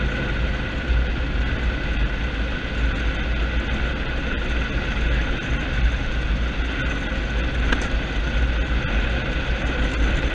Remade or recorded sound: recorded